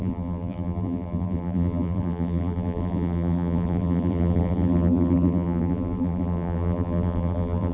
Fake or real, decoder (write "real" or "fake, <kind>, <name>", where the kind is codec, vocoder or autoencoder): fake, vocoder, BigVGAN v2